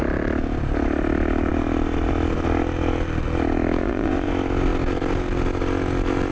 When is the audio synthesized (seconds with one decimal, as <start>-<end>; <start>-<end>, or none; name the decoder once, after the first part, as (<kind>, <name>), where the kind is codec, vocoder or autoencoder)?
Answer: 3.8-4.3 (vocoder, Vocos)